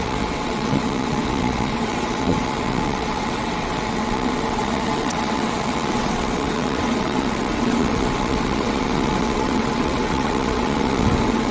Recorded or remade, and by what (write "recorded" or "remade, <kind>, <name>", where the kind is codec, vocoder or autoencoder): remade, vocoder, WaveNeXt